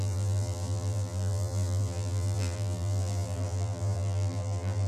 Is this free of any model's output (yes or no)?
no